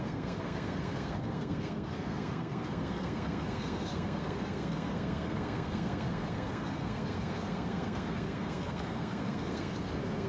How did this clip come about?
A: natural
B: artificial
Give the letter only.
B